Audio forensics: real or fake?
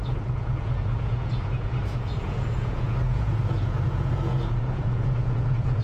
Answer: fake